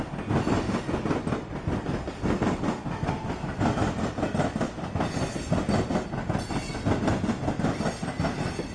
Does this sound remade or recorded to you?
recorded